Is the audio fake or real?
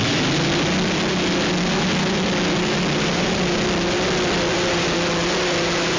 real